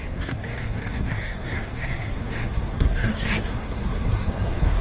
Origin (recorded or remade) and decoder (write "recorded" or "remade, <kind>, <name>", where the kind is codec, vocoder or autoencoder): remade, codec, SNAC